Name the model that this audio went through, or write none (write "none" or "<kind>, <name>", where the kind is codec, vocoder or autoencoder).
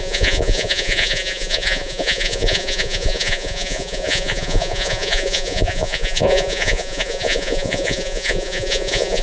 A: vocoder, Vocos